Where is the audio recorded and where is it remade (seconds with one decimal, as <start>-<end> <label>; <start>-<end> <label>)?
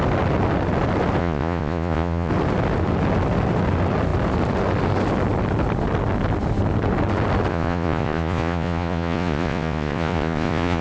0.0-1.2 recorded; 1.2-2.3 remade; 2.3-7.5 recorded; 7.5-10.8 remade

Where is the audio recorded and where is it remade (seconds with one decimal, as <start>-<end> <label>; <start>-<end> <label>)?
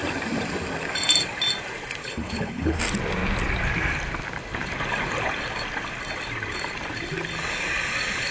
0.0-2.0 recorded; 2.0-2.8 remade; 2.8-8.3 recorded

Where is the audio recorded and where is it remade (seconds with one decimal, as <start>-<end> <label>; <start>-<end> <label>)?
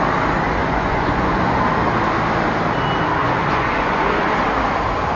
0.0-0.6 recorded; 0.6-1.6 remade; 1.6-3.2 recorded; 3.2-4.3 remade; 4.3-5.2 recorded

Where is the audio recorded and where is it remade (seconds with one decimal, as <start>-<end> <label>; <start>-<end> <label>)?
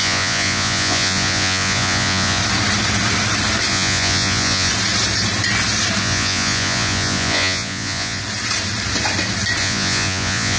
0.0-2.4 remade; 2.4-3.7 recorded; 3.7-4.7 remade; 4.7-6.0 recorded; 6.0-8.2 remade; 8.2-9.6 recorded; 9.6-10.6 remade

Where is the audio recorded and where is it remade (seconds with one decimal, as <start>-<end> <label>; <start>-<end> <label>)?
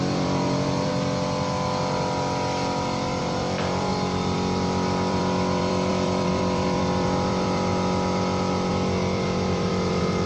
0.0-0.9 remade; 0.9-3.2 recorded; 3.2-7.7 remade; 7.7-8.7 recorded; 8.7-10.3 remade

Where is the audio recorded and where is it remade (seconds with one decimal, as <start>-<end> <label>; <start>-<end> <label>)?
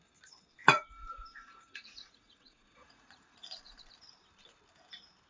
0.0-0.6 recorded; 0.6-3.8 remade; 3.8-5.3 recorded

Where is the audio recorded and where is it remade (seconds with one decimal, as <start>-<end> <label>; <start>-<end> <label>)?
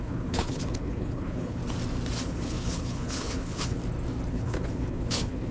0.0-1.6 remade; 1.6-2.2 recorded; 2.2-3.8 remade; 3.8-4.3 recorded; 4.3-5.5 remade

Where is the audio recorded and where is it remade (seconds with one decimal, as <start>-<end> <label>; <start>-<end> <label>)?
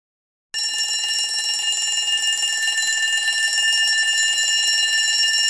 0.0-5.5 recorded